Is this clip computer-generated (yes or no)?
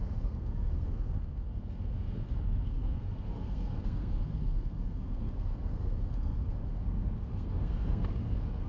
yes